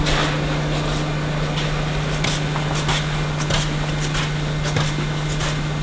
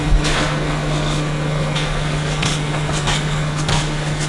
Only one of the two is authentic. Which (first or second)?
first